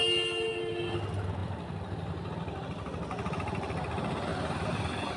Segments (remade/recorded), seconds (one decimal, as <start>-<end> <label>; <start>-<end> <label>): 0.0-5.2 recorded